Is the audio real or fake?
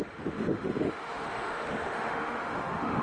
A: fake